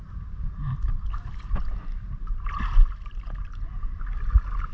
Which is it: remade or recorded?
recorded